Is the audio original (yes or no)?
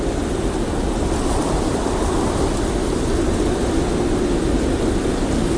yes